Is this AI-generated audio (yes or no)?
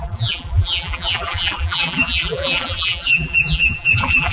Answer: yes